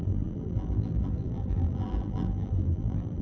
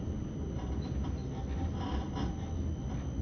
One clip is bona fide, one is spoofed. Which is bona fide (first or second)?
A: second